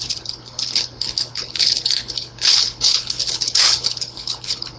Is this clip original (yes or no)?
no